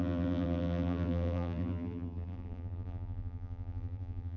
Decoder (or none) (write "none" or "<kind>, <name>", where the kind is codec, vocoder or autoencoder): vocoder, BigVGAN v2